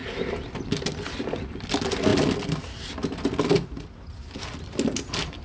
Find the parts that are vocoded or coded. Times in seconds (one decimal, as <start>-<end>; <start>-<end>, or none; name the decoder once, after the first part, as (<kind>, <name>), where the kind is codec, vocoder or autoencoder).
none